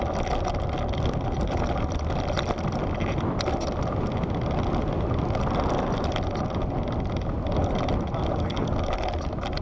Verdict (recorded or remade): recorded